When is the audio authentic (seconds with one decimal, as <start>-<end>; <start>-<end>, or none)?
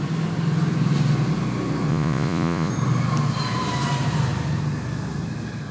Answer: 0.0-1.9; 2.7-5.7